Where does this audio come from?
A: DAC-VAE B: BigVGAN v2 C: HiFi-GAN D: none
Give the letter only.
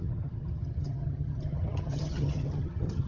C